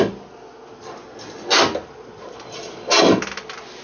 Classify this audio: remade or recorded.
recorded